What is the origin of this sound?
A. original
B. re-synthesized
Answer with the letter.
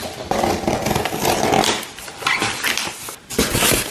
A